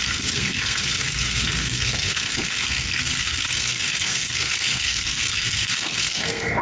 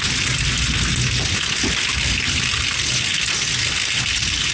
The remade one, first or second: first